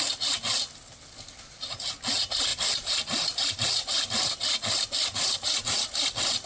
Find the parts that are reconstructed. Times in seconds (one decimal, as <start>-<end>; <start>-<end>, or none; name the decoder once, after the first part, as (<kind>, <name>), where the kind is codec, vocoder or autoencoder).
2.5-6.5 (vocoder, BigVGAN v2)